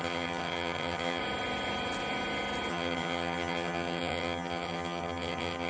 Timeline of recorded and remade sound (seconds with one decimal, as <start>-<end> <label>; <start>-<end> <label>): 0.0-1.2 remade; 1.2-2.7 recorded; 2.7-5.7 remade